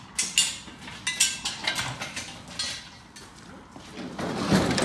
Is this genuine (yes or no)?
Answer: yes